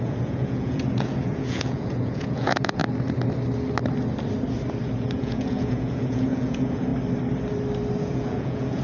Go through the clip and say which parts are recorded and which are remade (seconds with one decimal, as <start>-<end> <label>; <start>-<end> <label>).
0.0-2.8 remade; 2.8-4.9 recorded; 4.9-6.9 remade; 6.9-8.0 recorded; 8.0-8.8 remade